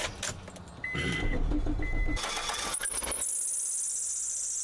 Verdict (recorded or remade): recorded